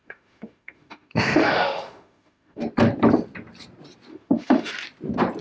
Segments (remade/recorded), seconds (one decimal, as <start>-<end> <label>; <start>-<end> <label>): 0.0-2.6 remade; 2.6-4.1 recorded; 4.1-4.7 remade; 4.7-5.4 recorded